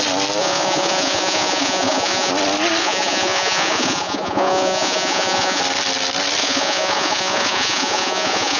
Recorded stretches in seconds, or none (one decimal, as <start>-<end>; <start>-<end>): 0.0-0.4; 2.3-2.8; 5.6-6.4

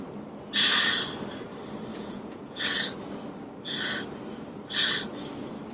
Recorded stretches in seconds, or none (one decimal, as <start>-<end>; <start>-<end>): 0.0-1.9; 2.8-5.7